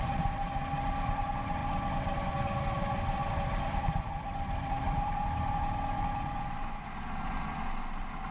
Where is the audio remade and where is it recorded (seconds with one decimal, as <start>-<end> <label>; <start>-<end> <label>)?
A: 0.0-8.3 recorded